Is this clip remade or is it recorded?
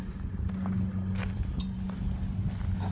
recorded